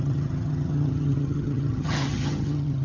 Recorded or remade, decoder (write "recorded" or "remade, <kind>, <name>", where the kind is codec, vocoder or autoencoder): remade, vocoder, HiFi-GAN